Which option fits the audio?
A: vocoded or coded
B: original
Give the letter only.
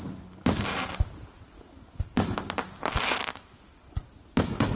B